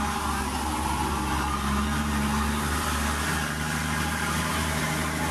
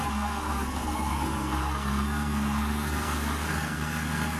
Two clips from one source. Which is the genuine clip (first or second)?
first